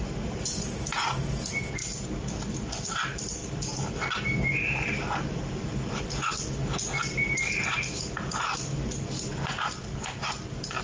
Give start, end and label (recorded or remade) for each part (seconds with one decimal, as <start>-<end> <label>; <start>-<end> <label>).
0.0-1.8 recorded; 1.8-2.4 remade; 2.4-3.4 recorded; 3.4-3.9 remade; 3.9-10.8 recorded